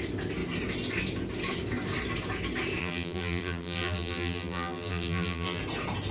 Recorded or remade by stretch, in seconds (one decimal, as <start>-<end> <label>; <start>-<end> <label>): 0.0-2.8 recorded; 2.8-5.6 remade; 5.6-6.1 recorded